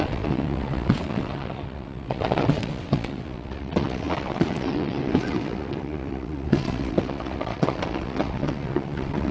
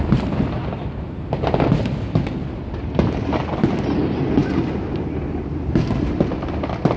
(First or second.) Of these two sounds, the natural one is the second